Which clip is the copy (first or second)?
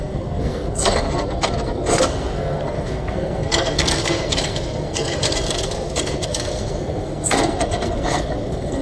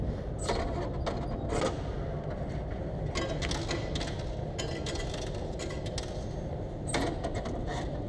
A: first